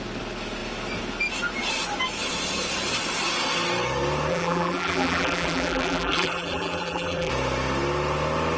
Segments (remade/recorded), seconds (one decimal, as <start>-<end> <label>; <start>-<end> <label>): 0.0-4.3 recorded; 4.3-7.3 remade; 7.3-8.6 recorded